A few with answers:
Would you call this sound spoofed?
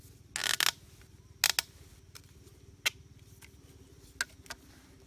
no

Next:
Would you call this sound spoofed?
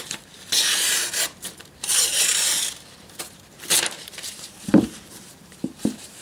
yes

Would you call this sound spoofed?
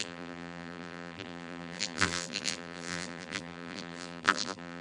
yes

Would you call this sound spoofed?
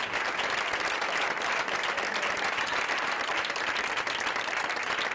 no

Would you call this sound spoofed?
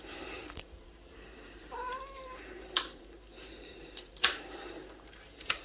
yes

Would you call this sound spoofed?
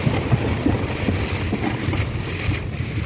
no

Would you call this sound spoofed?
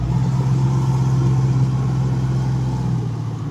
no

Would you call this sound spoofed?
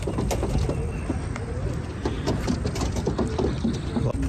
no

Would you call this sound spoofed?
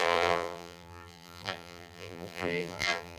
yes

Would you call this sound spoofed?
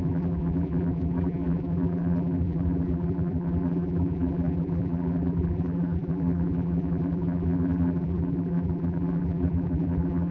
yes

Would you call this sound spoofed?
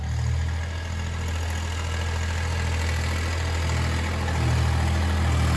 no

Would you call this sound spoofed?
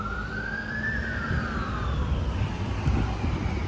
yes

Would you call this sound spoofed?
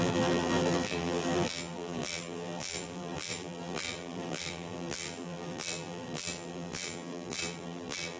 yes